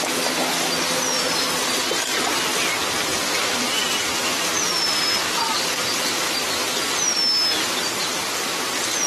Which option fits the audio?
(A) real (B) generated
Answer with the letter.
A